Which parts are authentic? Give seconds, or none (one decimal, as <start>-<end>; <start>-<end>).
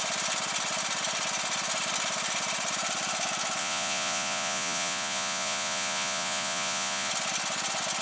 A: 0.0-3.6; 7.1-8.0